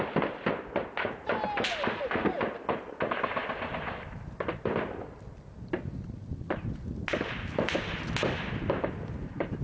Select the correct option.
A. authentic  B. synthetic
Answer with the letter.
A